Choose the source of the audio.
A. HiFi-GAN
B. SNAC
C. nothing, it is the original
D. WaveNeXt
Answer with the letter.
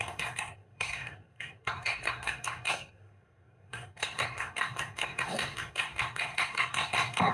B